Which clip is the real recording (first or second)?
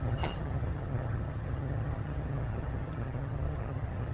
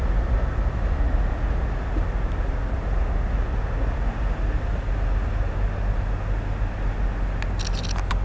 second